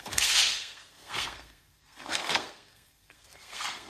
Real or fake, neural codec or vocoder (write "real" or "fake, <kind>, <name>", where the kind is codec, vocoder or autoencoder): fake, codec, SNAC